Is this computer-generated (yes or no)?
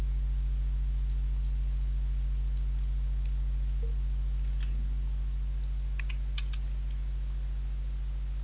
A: no